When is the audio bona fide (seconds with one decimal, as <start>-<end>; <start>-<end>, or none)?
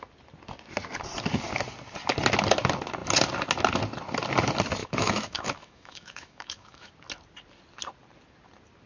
0.0-4.8; 6.9-8.9